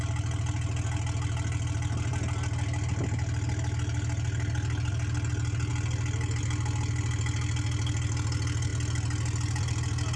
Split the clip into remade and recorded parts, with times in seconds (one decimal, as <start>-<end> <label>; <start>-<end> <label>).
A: 0.0-10.2 recorded